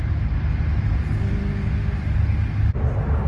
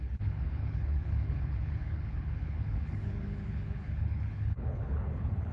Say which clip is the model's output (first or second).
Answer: second